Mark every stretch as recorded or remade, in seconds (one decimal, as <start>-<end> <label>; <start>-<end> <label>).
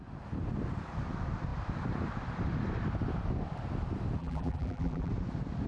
0.0-4.2 recorded; 4.2-5.1 remade; 5.1-5.7 recorded